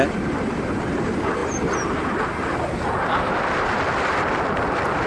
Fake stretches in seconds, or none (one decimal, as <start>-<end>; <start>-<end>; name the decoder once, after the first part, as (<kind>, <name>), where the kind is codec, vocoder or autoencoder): 0.0-5.1 (vocoder, BigVGAN v2)